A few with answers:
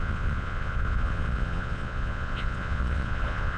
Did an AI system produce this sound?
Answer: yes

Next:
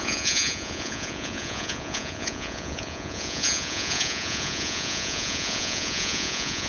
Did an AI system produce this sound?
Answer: yes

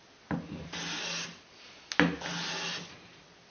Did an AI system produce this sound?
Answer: no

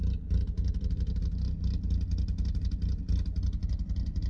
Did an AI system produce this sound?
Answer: no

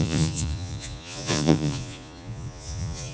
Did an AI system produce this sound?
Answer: yes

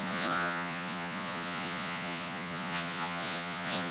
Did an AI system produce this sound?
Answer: yes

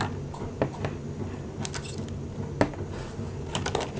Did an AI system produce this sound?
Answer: no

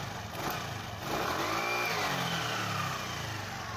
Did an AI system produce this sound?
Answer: no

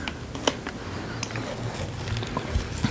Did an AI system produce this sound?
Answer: no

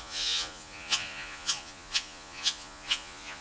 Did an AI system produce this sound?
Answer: yes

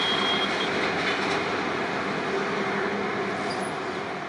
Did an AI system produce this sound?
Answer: no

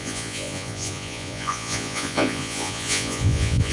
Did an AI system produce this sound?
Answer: yes